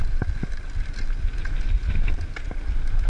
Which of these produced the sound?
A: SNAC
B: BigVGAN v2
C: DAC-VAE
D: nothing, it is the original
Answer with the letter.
D